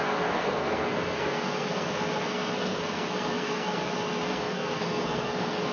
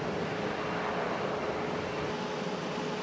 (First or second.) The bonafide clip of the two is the second